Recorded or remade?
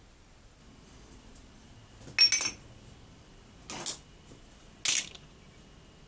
recorded